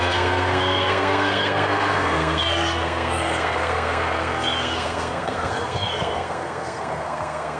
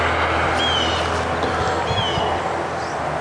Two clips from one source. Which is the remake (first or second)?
first